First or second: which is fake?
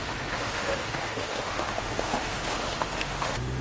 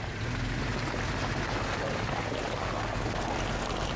first